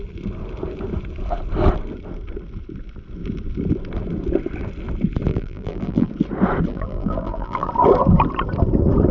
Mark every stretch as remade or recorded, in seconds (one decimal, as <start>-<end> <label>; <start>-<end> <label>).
0.0-5.3 recorded; 5.3-6.1 remade; 6.1-6.7 recorded; 6.7-7.7 remade; 7.7-9.1 recorded